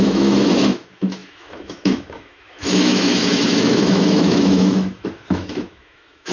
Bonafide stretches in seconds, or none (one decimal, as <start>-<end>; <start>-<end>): none